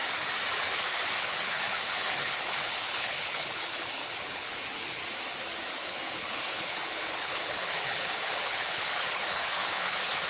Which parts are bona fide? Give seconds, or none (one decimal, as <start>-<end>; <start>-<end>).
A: 0.0-0.6; 5.0-5.7